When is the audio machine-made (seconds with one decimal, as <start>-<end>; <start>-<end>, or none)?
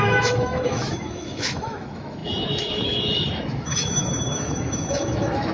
0.0-5.5